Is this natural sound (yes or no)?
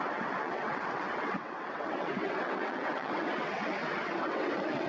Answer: no